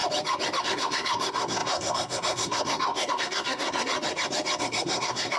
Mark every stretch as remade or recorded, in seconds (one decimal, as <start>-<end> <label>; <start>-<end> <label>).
0.0-0.6 recorded; 0.6-3.9 remade; 3.9-4.6 recorded; 4.6-5.4 remade